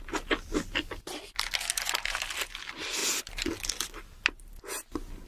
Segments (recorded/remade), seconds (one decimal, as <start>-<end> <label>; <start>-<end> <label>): 0.0-5.3 recorded

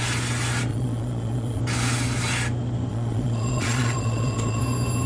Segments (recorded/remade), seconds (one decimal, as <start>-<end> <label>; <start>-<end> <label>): 0.0-0.7 recorded; 0.7-1.6 remade; 1.6-2.9 recorded; 2.9-4.6 remade; 4.6-5.1 recorded

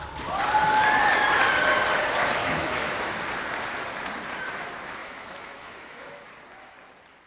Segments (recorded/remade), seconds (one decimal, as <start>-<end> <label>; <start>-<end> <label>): 0.0-2.4 recorded; 2.4-3.2 remade; 3.2-5.0 recorded; 5.0-6.3 remade; 6.3-7.3 recorded

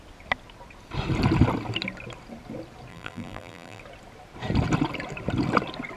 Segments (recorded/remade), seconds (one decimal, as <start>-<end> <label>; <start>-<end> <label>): 0.0-2.9 recorded; 2.9-3.8 remade; 3.8-6.0 recorded

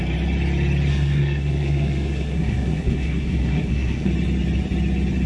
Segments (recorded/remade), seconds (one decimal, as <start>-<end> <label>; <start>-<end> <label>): 0.0-0.9 recorded; 0.9-4.1 remade; 4.1-5.3 recorded

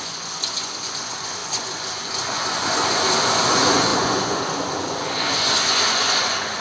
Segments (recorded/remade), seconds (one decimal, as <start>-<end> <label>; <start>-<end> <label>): 0.0-6.6 remade

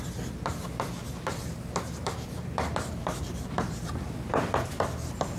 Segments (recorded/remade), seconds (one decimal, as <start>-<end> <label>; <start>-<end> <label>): 0.0-5.4 remade